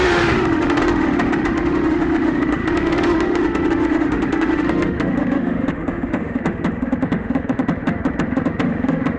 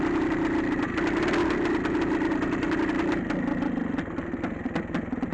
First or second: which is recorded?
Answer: second